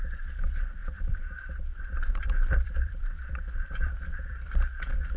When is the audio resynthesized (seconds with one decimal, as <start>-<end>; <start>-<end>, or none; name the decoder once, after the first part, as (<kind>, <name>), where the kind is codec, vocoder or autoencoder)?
0.8-3.9 (vocoder, BigVGAN v2)